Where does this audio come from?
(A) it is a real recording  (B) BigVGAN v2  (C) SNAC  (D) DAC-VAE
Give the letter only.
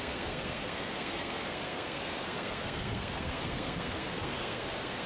C